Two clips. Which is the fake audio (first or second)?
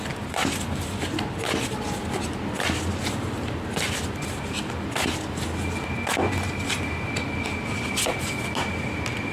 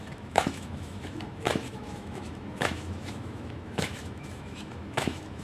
second